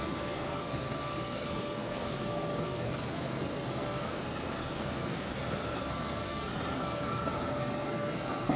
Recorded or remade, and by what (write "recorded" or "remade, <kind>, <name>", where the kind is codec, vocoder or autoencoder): remade, codec, SNAC